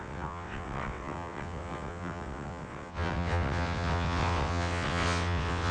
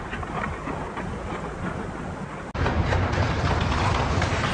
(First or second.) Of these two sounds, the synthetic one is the first